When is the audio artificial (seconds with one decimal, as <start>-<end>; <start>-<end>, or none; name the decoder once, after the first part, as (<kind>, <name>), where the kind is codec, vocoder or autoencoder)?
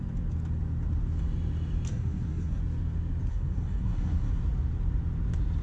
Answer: 1.9-2.6 (codec, SNAC); 3.3-4.3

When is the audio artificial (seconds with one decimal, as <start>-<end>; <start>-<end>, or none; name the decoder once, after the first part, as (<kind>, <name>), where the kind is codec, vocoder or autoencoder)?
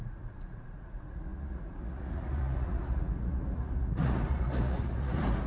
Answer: 0.0-5.5 (vocoder, Vocos)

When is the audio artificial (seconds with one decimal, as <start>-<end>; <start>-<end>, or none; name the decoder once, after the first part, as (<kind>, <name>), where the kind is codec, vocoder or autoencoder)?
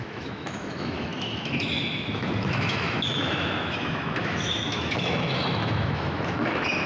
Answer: 0.0-6.9 (autoencoder, DAC-VAE)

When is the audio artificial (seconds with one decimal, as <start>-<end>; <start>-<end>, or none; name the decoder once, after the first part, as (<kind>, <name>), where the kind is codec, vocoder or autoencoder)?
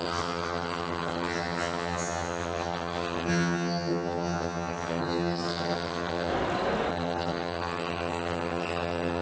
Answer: 0.0-6.3 (vocoder, HiFi-GAN); 6.9-9.2